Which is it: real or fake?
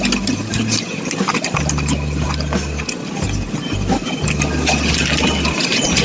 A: real